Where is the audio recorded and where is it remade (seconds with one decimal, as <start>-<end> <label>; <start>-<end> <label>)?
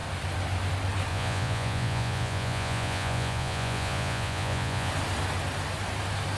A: 0.0-1.1 recorded; 1.1-4.9 remade; 4.9-6.4 recorded